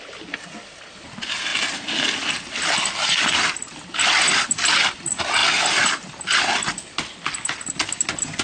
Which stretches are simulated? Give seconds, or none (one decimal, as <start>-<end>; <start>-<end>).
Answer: none